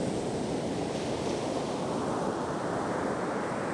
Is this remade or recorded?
recorded